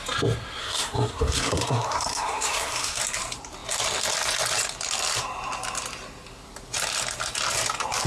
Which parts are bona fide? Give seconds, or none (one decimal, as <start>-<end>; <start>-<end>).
0.0-0.6; 3.0-8.1